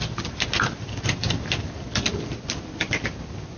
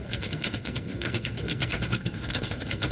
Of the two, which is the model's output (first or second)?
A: second